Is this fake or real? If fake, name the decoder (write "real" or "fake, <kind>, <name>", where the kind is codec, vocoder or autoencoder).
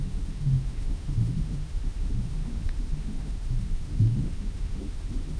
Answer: fake, autoencoder, DAC-VAE